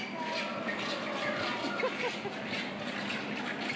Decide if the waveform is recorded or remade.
recorded